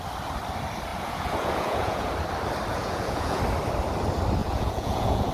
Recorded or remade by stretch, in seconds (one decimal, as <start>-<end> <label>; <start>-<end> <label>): 0.0-0.9 recorded; 0.9-2.1 remade; 2.1-2.7 recorded; 2.7-3.4 remade; 3.4-4.4 recorded; 4.4-5.3 remade